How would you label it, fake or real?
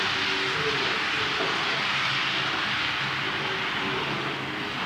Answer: real